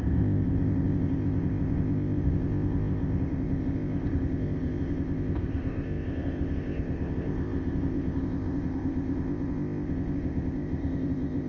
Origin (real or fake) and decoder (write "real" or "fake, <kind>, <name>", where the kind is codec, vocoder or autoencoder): fake, codec, ZipCodec